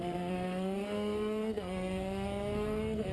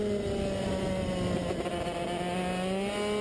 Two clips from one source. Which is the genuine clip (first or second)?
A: second